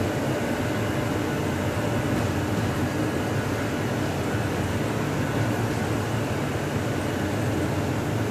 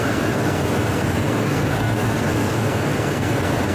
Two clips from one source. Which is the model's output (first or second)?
second